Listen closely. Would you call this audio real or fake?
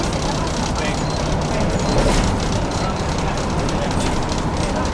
real